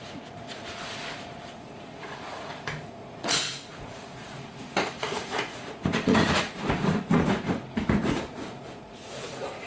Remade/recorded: remade